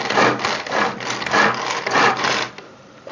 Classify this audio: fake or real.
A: real